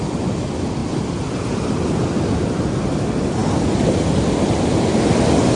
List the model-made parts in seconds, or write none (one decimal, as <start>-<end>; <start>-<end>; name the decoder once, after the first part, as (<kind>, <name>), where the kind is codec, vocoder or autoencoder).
none